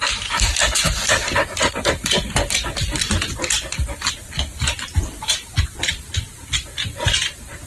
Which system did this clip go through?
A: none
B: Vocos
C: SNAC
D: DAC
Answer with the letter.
A